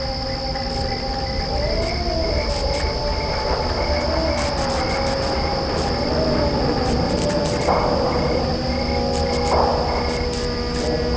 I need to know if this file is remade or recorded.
recorded